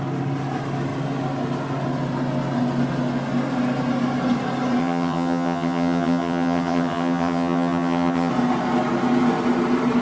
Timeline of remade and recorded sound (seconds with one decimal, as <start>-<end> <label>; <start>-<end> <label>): 0.0-4.8 recorded; 4.8-8.3 remade; 8.3-10.0 recorded